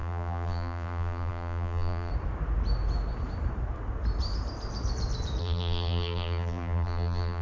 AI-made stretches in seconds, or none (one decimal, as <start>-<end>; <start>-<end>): 0.0-2.1; 5.4-7.4

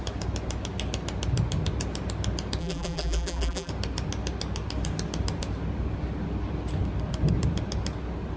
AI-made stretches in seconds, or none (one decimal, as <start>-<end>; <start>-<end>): 2.6-3.7